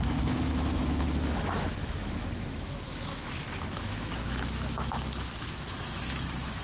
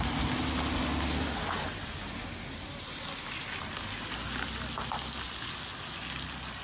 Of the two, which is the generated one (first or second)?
first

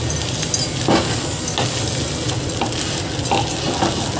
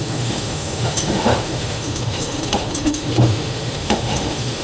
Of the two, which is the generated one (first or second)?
second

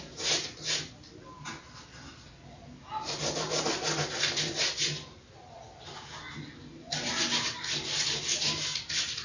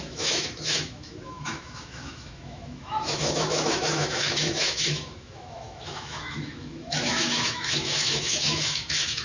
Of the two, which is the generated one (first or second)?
second